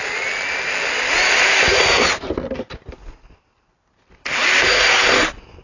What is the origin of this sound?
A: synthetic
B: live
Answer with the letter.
B